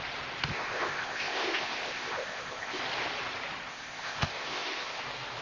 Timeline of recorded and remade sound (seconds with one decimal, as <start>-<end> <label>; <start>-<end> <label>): 0.0-0.5 recorded; 0.5-2.8 remade; 2.8-3.7 recorded; 3.7-5.0 remade; 5.0-5.4 recorded